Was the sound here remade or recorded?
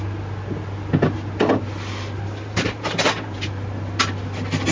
recorded